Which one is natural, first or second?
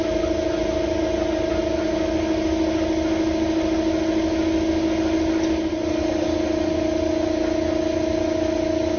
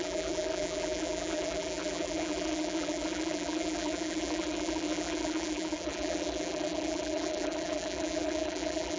first